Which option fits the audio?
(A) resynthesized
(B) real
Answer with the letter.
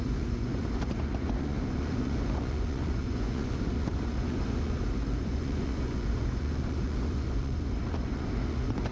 A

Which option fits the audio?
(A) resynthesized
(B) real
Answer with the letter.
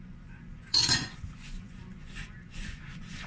A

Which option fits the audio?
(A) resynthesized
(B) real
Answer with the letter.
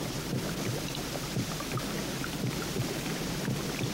B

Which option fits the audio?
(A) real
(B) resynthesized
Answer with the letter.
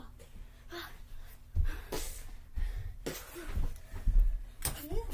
A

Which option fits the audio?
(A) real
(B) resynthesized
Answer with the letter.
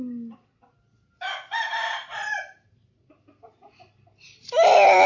A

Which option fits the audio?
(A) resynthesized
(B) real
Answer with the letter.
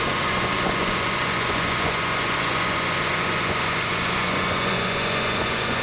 A